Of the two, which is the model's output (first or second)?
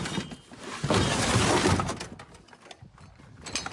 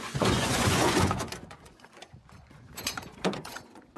second